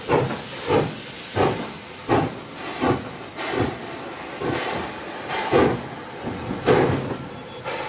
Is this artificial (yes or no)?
no